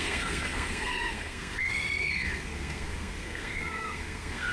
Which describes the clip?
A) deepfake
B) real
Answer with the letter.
A